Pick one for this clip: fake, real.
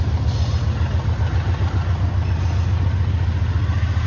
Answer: real